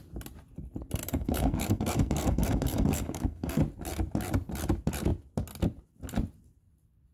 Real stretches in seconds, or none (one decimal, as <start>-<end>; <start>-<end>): 0.0-1.1; 3.6-7.1